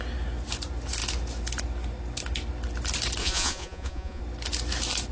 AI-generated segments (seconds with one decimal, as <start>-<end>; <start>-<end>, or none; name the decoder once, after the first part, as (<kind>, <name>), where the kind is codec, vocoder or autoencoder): 3.2-4.2 (vocoder, Vocos)